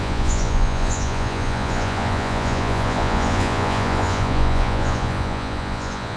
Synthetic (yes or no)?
yes